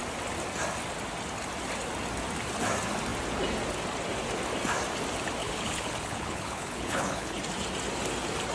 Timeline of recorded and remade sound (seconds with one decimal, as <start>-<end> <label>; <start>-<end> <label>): 0.0-5.4 recorded; 5.4-7.4 remade; 7.4-8.5 recorded